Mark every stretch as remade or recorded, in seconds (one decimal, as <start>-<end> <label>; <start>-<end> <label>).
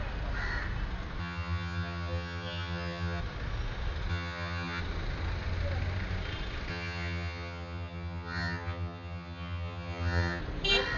0.0-1.2 recorded; 1.2-3.2 remade; 3.2-4.1 recorded; 4.1-4.8 remade; 4.8-6.7 recorded; 6.7-10.4 remade; 10.4-11.0 recorded